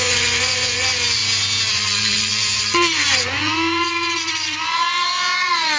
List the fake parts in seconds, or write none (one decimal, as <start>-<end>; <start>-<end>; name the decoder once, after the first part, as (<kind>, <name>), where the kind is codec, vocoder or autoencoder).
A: 0.0-1.2 (vocoder, Vocos); 1.7-5.8